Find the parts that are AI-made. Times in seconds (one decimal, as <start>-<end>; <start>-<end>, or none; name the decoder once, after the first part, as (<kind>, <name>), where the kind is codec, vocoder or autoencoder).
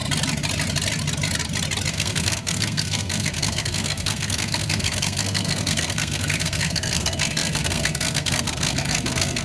1.9-9.4 (codec, SNAC)